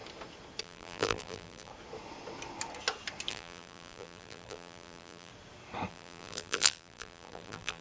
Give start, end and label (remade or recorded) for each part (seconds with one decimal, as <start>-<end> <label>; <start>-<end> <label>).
0.0-0.6 recorded; 0.6-1.7 remade; 1.7-3.3 recorded; 3.3-5.3 remade; 5.3-5.9 recorded; 5.9-7.8 remade